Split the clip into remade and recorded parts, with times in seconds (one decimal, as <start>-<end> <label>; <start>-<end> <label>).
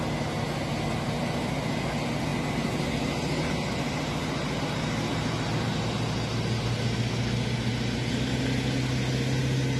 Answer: 0.0-9.8 recorded